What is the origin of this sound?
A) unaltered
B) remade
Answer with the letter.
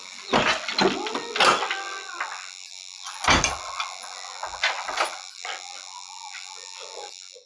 A